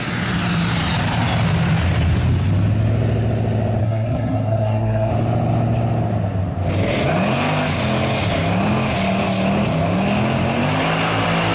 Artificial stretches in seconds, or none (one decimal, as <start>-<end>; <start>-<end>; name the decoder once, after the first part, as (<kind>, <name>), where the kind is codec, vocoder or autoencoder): 3.8-5.1 (codec, SNAC)